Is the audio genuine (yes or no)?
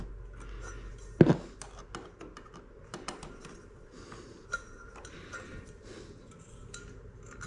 yes